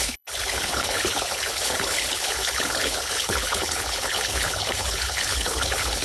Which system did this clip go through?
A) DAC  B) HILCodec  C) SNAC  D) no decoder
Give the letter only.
B